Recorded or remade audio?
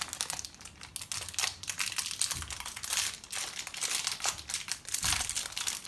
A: recorded